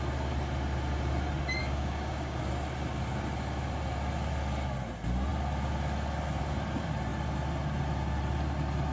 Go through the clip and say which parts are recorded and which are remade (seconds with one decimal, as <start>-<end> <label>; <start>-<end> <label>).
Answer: 0.0-1.6 recorded; 1.6-2.4 remade; 2.4-8.9 recorded